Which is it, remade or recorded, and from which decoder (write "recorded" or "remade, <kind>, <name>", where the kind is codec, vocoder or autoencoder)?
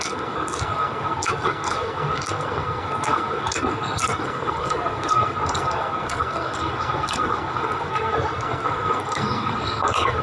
remade, codec, SNAC